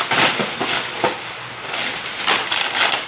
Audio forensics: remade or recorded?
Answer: recorded